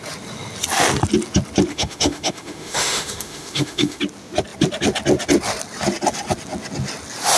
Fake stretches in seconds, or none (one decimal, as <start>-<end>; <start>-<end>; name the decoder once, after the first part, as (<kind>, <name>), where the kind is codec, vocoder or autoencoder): 1.7-4.0 (autoencoder, DAC-VAE)